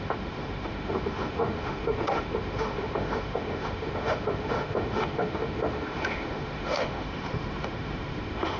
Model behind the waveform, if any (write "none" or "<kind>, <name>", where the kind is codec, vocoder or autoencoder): autoencoder, DAC-VAE